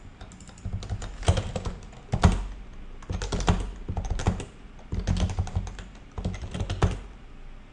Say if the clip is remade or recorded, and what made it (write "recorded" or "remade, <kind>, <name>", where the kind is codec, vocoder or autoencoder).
recorded